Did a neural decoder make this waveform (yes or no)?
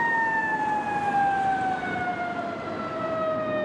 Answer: no